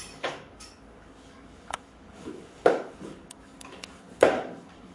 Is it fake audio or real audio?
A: fake